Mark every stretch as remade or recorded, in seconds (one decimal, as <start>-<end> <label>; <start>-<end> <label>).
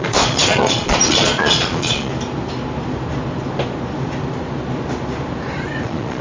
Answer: 0.0-2.1 remade; 2.1-5.8 recorded; 5.8-6.2 remade